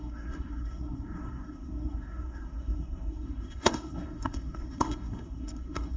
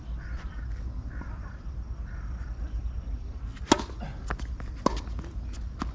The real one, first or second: second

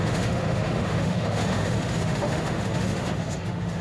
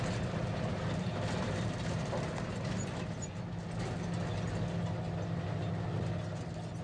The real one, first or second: second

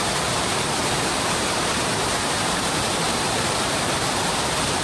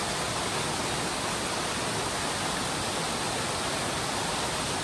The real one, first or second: second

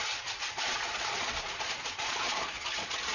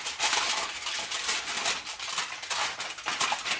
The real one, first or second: second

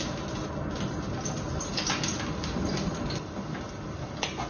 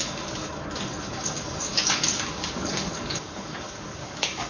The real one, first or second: first